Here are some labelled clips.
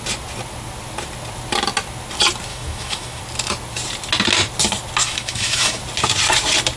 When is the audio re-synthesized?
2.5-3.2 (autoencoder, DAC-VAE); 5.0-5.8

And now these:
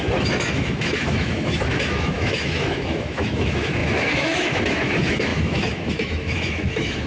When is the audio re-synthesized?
0.0-7.1 (autoencoder, DAC-VAE)